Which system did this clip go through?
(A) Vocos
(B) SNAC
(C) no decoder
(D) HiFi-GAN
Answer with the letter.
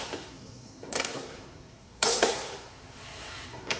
B